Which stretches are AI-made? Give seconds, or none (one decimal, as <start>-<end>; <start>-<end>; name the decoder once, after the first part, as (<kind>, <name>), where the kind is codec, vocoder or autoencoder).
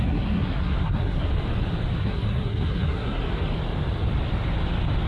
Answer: 0.0-1.3 (codec, SNAC); 2.0-3.2